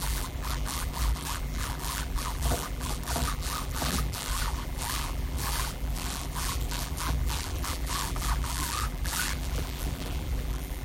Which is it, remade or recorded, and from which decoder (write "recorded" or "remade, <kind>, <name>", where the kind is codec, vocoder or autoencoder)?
remade, vocoder, BigVGAN v2